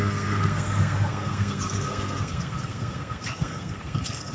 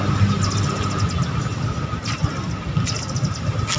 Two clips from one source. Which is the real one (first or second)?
second